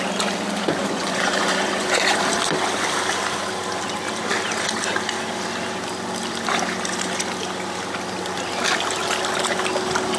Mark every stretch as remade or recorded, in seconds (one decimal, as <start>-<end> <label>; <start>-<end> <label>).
0.0-0.8 recorded; 0.8-2.2 remade; 2.2-10.2 recorded